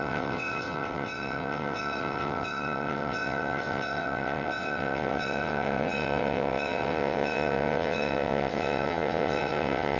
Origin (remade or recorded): remade